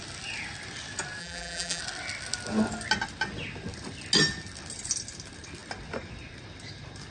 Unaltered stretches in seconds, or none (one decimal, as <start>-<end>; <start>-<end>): 0.0-1.2; 1.8-7.1